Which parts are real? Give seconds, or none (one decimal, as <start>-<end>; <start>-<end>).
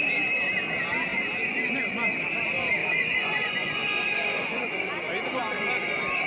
0.0-2.8; 4.9-6.3